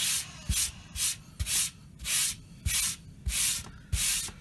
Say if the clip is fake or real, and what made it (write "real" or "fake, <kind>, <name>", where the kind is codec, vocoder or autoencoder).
real